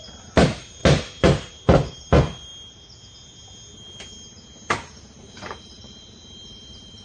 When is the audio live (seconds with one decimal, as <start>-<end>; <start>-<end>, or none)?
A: 0.8-1.5; 2.5-5.0